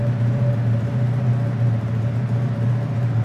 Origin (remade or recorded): recorded